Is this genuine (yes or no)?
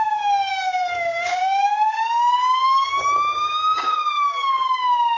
no